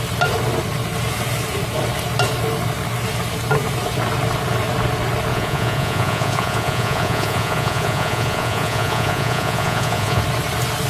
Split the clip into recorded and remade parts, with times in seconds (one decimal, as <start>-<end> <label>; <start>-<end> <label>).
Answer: 0.0-5.3 recorded; 5.3-10.2 remade; 10.2-10.9 recorded